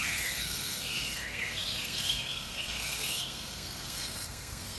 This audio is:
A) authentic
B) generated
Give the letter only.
B